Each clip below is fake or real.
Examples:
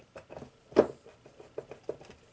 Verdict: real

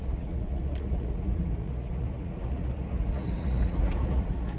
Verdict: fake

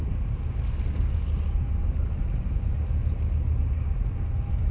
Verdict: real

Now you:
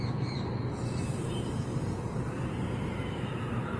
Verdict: real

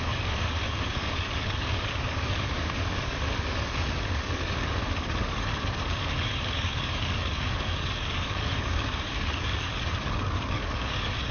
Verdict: fake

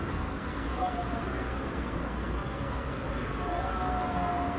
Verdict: fake